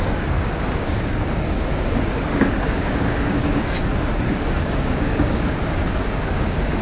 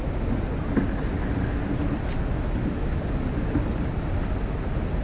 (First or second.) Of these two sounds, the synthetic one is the first